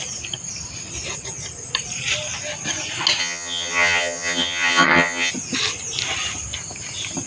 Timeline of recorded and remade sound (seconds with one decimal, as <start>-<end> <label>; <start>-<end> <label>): 0.0-3.2 recorded; 3.2-5.3 remade; 5.3-7.3 recorded